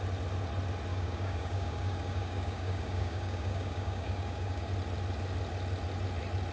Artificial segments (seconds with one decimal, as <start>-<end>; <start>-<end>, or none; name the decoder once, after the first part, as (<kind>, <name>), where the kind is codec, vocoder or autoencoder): 0.9-4.7 (codec, DAC)